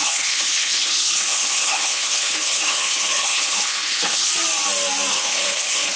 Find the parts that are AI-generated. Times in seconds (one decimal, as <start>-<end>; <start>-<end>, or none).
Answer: 0.0-4.3; 5.1-6.0